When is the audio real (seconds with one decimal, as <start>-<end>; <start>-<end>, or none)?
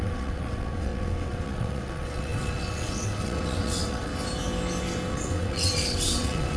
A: 4.1-5.1